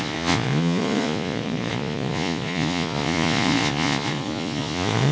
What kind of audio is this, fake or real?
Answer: fake